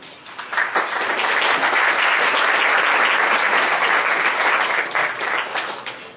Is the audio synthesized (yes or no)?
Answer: no